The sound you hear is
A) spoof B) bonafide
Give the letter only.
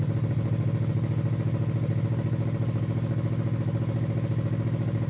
B